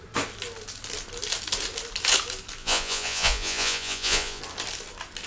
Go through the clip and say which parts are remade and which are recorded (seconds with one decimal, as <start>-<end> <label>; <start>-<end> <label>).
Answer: 0.0-2.6 recorded; 2.6-4.4 remade; 4.4-5.3 recorded